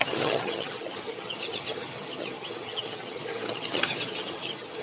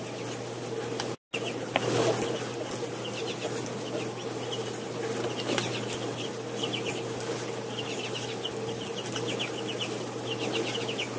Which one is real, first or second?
second